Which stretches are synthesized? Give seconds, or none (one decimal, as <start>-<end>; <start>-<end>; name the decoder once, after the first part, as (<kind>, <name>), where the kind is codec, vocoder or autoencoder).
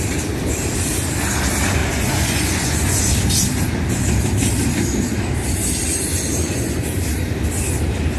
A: 1.8-3.0 (vocoder, Vocos); 6.4-6.9